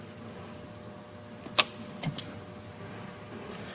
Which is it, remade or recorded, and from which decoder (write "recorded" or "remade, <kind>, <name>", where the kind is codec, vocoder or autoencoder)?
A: recorded